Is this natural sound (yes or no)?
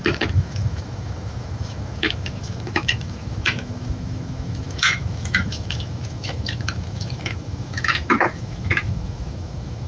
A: no